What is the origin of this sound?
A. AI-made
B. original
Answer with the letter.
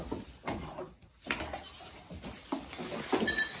B